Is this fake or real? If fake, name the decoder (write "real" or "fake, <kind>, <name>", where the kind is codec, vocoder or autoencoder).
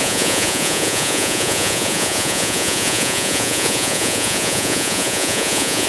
fake, vocoder, Vocos